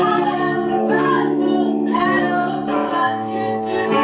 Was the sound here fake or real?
fake